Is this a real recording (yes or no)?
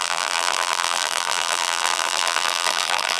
no